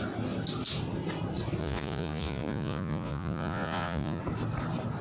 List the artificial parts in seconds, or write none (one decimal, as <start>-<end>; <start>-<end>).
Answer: 1.6-4.2